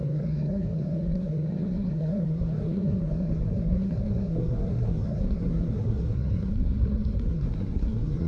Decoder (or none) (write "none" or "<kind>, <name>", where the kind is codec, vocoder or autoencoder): codec, SNAC